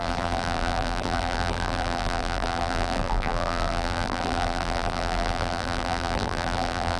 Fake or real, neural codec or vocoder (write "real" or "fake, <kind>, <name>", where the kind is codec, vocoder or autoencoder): fake, vocoder, BigVGAN v2